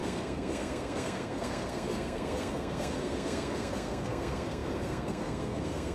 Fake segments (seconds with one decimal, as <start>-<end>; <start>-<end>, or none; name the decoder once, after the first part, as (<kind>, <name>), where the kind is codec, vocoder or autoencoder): 0.0-5.9 (codec, SNAC)